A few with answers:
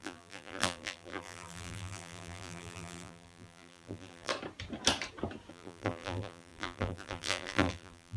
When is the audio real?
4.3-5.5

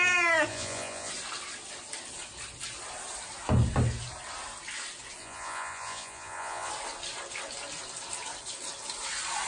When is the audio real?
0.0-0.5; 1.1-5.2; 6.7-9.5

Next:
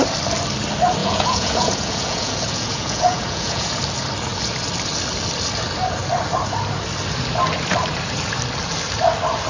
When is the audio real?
0.0-1.0; 3.8-9.5

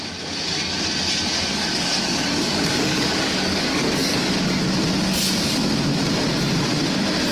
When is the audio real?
0.0-1.5; 4.3-7.3